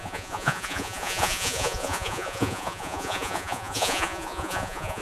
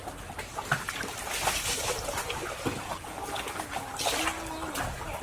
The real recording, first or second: second